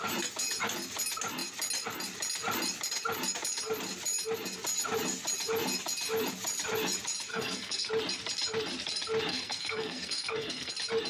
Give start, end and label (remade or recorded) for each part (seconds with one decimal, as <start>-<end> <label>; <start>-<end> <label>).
0.0-7.3 recorded; 7.3-7.9 remade; 7.9-9.3 recorded; 9.3-10.7 remade; 10.7-11.1 recorded